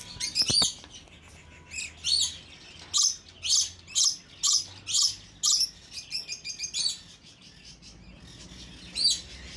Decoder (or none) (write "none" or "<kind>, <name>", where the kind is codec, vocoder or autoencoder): none